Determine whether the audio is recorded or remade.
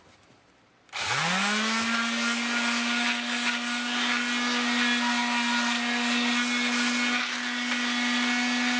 recorded